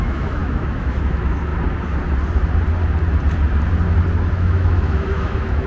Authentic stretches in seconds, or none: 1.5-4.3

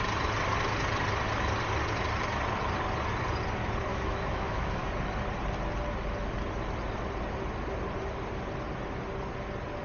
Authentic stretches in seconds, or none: 0.0-3.9; 4.9-9.8